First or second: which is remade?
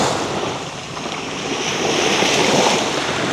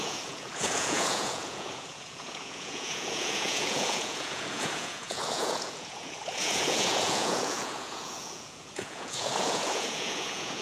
second